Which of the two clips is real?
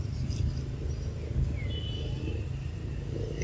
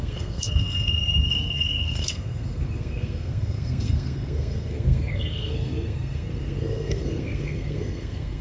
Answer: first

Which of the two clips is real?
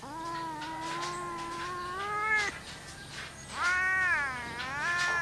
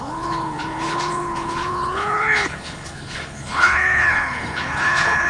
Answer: first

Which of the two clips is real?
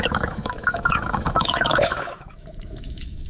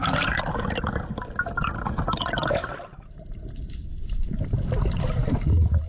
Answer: second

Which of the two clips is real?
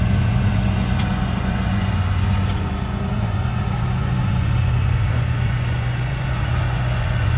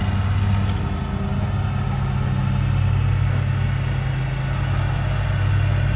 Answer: second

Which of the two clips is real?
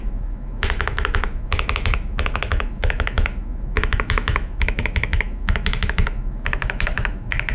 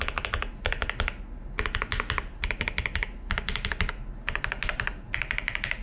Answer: second